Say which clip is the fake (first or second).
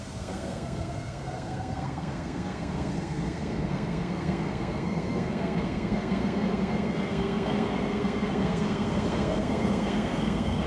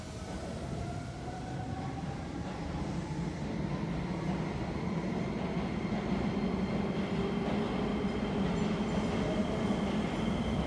first